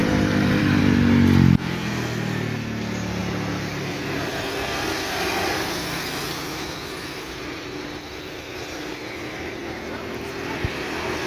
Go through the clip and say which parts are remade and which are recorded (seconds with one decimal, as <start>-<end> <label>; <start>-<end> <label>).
0.0-0.8 remade; 0.8-11.3 recorded